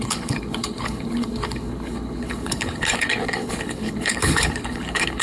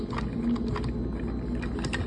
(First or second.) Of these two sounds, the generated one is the first